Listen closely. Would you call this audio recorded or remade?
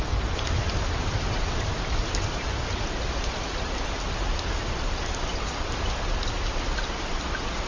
recorded